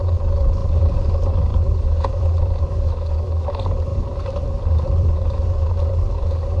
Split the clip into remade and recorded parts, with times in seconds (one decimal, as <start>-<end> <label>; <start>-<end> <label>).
0.0-0.6 recorded; 0.6-1.1 remade; 1.1-1.5 recorded; 1.5-2.6 remade; 2.6-3.9 recorded; 3.9-5.4 remade; 5.4-6.6 recorded